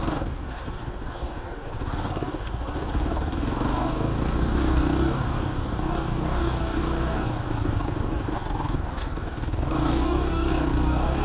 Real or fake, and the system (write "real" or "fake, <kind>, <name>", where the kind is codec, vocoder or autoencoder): fake, codec, DAC